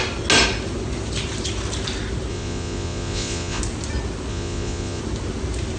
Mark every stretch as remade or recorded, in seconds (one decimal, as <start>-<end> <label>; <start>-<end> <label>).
0.0-2.3 recorded; 2.3-3.6 remade; 3.6-4.3 recorded; 4.3-5.0 remade; 5.0-5.8 recorded

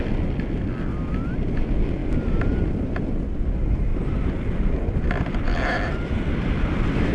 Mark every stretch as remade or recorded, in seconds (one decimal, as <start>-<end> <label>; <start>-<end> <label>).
0.0-7.1 recorded

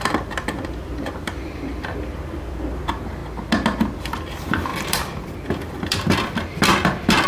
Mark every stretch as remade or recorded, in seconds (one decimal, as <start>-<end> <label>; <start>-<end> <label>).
0.0-3.2 remade; 3.2-4.0 recorded; 4.0-7.3 remade

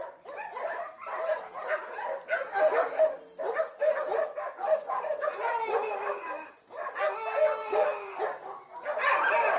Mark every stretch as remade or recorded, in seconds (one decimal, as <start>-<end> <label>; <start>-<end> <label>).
0.0-7.6 recorded; 7.6-8.2 remade; 8.2-9.6 recorded